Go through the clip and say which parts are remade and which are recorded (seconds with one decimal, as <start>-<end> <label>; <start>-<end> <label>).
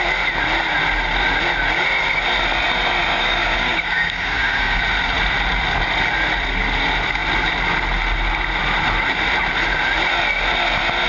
0.0-3.1 recorded; 3.1-4.8 remade; 4.8-11.1 recorded